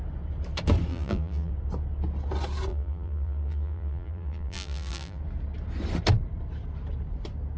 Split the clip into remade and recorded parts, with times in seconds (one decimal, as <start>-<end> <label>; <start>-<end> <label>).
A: 0.0-0.9 recorded; 0.9-1.5 remade; 1.5-2.7 recorded; 2.7-5.2 remade; 5.2-7.6 recorded